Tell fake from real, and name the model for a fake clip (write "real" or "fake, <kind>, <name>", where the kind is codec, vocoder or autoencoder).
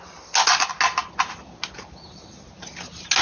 real